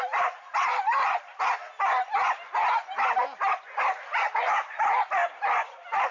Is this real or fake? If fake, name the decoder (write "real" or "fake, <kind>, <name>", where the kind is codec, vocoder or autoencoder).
real